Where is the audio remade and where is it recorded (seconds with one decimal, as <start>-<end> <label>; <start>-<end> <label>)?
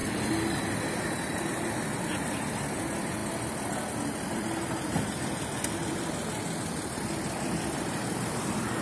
0.0-3.2 remade; 3.2-3.9 recorded; 3.9-8.8 remade